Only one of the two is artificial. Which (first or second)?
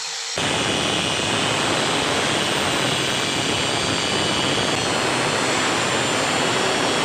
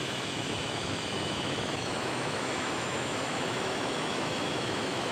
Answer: second